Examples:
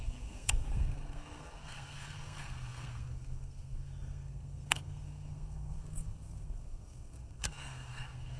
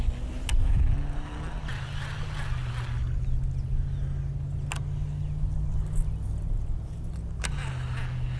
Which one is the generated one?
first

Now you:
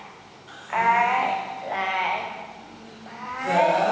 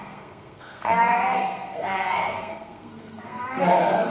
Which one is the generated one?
second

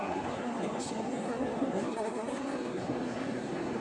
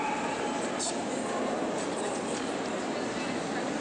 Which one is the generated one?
first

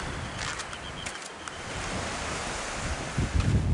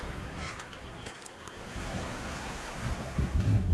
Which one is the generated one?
second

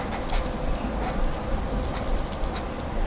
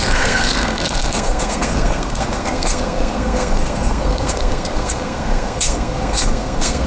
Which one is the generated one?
second